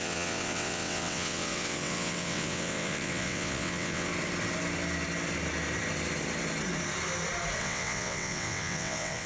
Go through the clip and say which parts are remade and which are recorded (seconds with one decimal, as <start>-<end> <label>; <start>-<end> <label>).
0.0-4.1 remade; 4.1-7.6 recorded; 7.6-9.3 remade